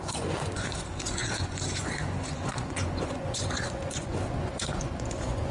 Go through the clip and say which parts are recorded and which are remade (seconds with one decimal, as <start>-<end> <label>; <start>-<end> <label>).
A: 0.0-5.5 remade